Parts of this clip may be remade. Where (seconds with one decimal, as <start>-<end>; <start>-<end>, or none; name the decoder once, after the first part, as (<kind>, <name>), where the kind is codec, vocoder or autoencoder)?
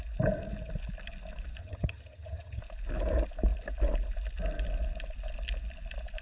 1.6-2.6 (vocoder, HiFi-GAN)